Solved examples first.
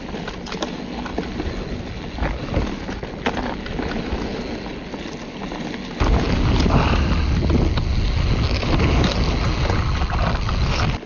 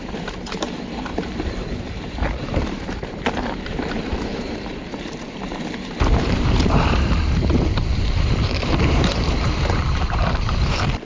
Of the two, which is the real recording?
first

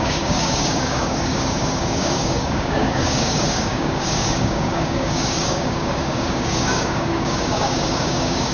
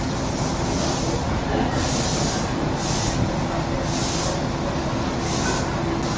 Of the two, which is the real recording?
second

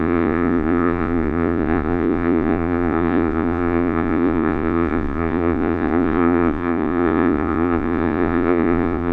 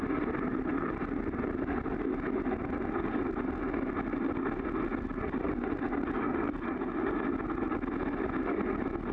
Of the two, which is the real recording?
second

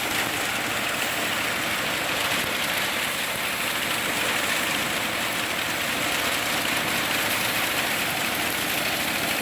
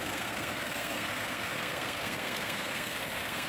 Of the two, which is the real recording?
first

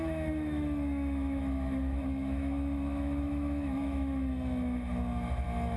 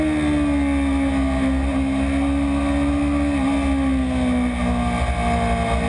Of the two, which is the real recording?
second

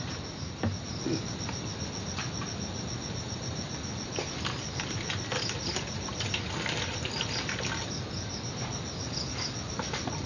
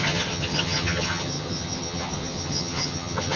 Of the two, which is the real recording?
first